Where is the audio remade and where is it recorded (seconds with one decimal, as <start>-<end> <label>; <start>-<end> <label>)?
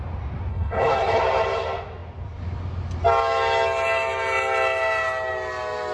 0.0-0.5 recorded; 0.5-1.2 remade; 1.2-5.9 recorded